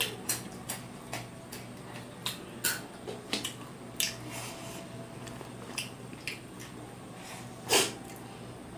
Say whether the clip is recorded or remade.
recorded